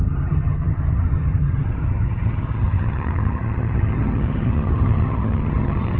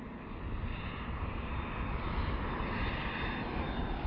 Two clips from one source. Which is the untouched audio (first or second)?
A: second